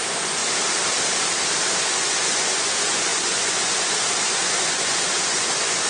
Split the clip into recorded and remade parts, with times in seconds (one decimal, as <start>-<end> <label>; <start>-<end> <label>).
0.0-0.4 remade; 0.4-1.7 recorded; 1.7-5.9 remade